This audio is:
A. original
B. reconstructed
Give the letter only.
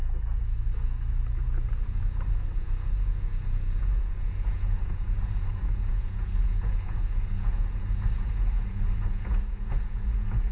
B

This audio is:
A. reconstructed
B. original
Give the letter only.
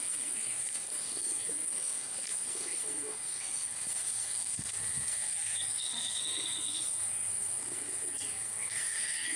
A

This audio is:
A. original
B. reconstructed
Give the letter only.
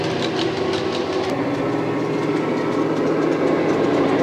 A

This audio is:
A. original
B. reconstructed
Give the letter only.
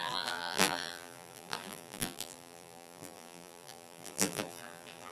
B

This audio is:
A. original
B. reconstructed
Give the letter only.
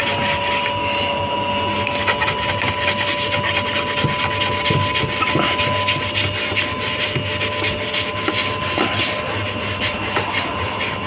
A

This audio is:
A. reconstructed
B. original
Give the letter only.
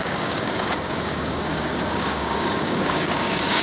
A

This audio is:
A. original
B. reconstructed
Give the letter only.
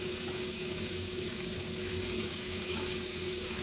B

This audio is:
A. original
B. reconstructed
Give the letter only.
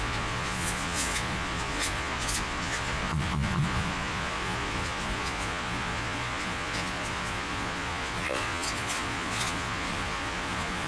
B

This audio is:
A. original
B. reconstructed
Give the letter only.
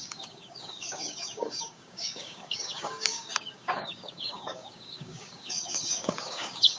B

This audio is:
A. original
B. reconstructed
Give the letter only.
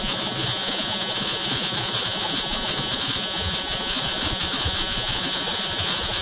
B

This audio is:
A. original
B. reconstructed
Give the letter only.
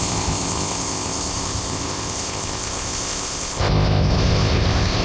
B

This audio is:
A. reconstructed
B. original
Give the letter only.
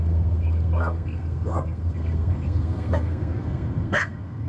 A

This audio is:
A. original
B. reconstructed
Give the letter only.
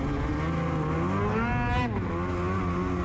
A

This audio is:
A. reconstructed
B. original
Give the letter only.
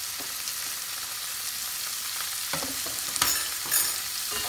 B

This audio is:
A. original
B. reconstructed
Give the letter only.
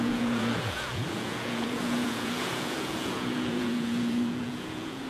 B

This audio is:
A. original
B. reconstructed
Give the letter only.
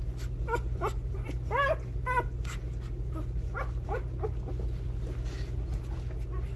A